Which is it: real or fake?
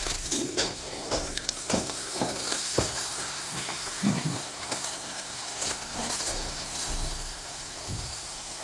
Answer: fake